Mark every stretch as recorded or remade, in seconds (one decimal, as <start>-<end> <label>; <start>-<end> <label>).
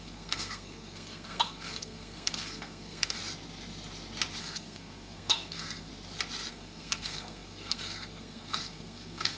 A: 0.0-3.2 remade; 3.2-4.4 recorded; 4.4-5.9 remade; 5.9-6.5 recorded; 6.5-9.4 remade